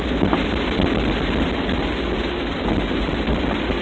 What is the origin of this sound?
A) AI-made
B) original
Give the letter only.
B